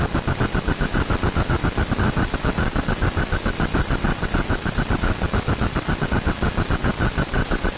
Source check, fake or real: real